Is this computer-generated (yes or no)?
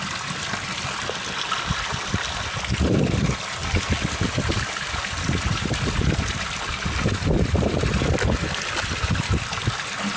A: no